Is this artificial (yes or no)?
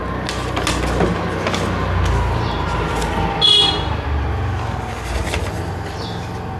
no